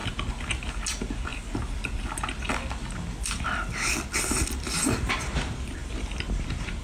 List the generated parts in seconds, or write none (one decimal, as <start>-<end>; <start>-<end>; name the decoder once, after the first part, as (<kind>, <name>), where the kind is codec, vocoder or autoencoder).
none